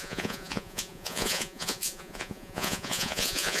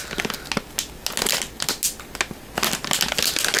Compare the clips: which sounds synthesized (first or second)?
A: first